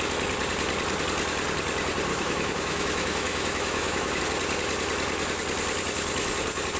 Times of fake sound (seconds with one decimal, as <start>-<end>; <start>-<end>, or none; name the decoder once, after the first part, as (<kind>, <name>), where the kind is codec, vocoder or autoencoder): 2.1-4.2 (autoencoder, DAC-VAE)